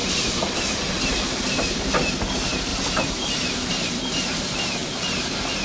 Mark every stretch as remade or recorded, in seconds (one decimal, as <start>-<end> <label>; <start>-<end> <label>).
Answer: 0.0-2.1 remade; 2.1-2.7 recorded; 2.7-3.7 remade; 3.7-4.8 recorded; 4.8-5.6 remade